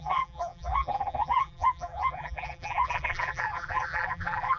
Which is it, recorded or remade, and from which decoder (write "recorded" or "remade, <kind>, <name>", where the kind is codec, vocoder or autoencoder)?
remade, vocoder, BigVGAN v2